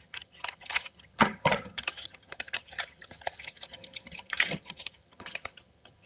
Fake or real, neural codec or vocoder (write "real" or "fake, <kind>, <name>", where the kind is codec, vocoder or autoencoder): fake, vocoder, HiFi-GAN